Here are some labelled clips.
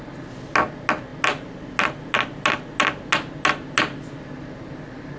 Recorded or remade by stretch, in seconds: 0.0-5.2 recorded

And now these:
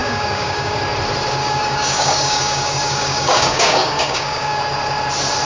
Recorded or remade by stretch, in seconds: 0.0-0.8 remade; 0.8-1.4 recorded; 1.4-4.6 remade; 4.6-5.4 recorded

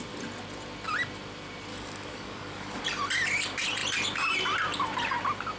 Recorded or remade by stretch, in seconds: 0.0-1.7 recorded; 1.7-2.8 remade; 2.8-5.6 recorded

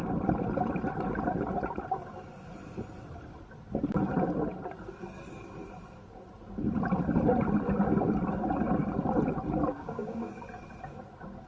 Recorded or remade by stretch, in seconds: 0.0-9.7 recorded; 9.7-10.3 remade; 10.3-11.5 recorded

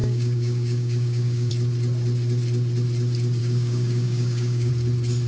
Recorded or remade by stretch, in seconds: 0.0-1.5 remade; 1.5-3.4 recorded; 3.4-4.7 remade; 4.7-5.3 recorded

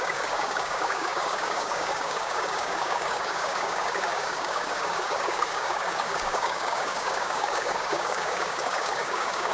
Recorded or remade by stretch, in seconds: 0.0-9.5 remade